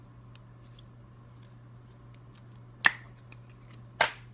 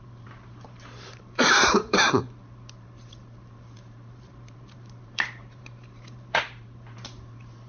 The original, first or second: first